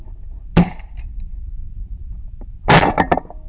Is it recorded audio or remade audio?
recorded